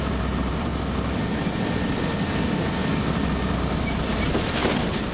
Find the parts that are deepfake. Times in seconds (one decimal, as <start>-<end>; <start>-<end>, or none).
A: 0.0-0.7; 3.8-5.1